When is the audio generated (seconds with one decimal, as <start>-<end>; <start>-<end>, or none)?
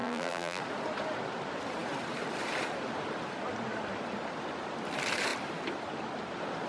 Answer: 0.0-0.6